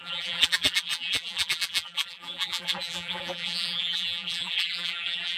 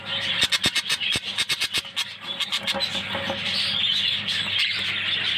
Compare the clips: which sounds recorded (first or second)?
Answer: second